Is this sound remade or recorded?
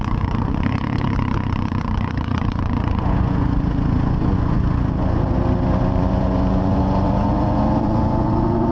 remade